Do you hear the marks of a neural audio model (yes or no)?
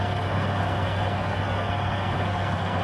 yes